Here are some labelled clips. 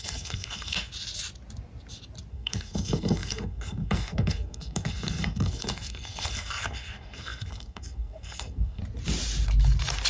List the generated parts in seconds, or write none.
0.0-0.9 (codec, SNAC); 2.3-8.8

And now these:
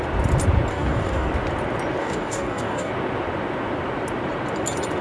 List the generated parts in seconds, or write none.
0.7-1.3 (codec, DAC); 2.0-2.9

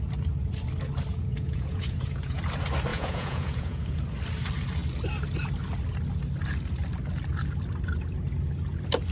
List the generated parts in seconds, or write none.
1.1-2.4 (vocoder, Vocos); 2.9-4.0

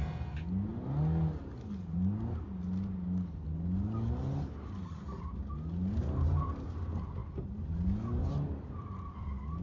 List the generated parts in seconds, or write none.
none

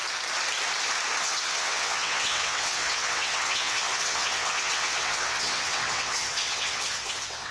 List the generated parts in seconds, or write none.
1.2-7.5 (vocoder, WaveNeXt)